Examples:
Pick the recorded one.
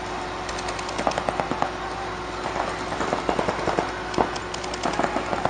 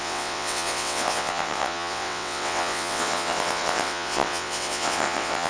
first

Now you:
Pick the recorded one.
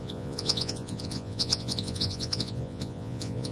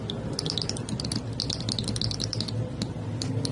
second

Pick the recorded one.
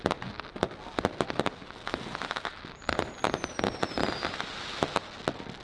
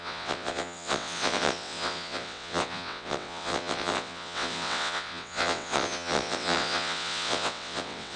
first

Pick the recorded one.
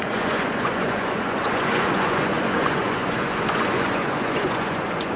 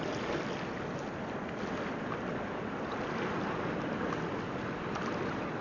second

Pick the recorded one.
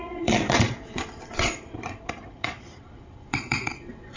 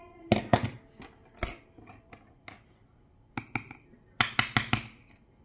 second